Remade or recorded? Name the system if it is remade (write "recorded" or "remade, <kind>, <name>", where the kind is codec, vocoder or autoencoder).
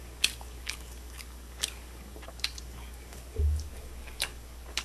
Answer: remade, codec, DAC